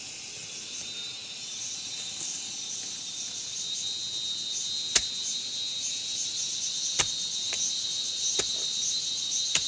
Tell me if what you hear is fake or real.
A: real